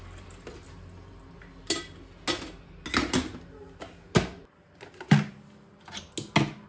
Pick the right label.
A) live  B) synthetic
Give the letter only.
A